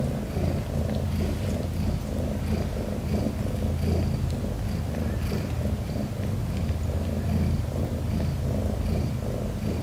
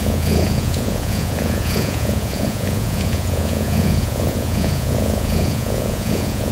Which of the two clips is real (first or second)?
first